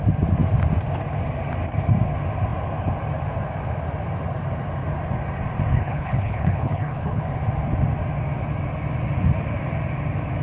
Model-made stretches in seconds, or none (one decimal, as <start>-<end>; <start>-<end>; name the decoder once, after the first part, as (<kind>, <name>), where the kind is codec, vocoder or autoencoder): 5.7-7.2 (codec, HILCodec)